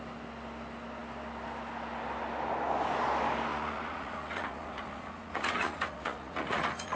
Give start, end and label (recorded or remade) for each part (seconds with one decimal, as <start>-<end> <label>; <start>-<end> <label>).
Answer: 0.0-3.5 recorded; 3.5-7.0 remade